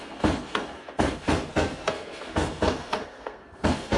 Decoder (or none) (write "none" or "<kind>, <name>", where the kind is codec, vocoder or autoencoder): codec, SNAC